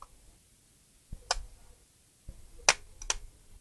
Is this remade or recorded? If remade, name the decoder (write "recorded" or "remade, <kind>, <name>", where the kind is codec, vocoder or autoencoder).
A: recorded